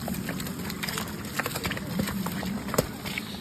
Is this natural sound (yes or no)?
yes